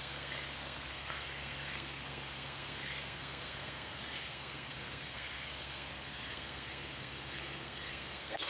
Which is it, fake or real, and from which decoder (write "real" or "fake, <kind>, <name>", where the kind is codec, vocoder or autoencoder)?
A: fake, codec, SNAC